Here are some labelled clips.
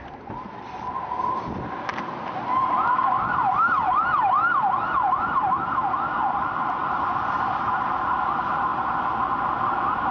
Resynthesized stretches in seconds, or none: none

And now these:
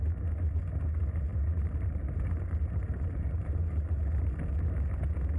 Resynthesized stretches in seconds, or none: 1.3-4.5 (vocoder, BigVGAN v2)